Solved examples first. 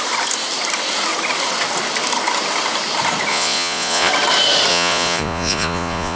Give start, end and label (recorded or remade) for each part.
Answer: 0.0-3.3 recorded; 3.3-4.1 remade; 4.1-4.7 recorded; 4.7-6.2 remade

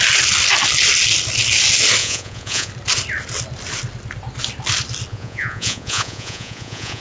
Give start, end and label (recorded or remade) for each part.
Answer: 0.0-2.0 recorded; 2.0-2.7 remade; 2.7-5.1 recorded; 5.1-7.0 remade

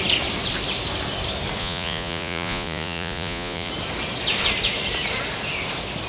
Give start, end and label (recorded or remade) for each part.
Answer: 0.0-1.6 recorded; 1.6-3.7 remade; 3.7-6.1 recorded

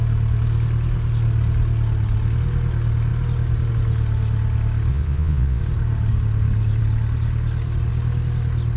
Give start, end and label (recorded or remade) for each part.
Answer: 0.0-4.9 recorded; 4.9-5.6 remade; 5.6-8.8 recorded

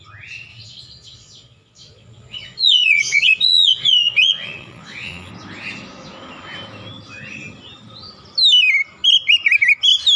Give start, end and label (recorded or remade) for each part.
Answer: 0.0-0.5 recorded; 0.5-5.3 remade; 5.3-10.2 recorded

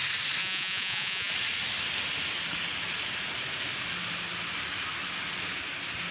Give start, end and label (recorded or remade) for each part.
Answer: 0.0-0.4 recorded; 0.4-1.3 remade; 1.3-6.1 recorded